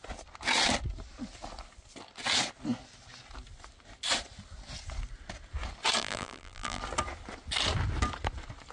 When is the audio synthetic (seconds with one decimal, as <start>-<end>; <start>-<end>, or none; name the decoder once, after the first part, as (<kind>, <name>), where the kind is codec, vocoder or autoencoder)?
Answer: 6.0-6.8 (vocoder, BigVGAN v2)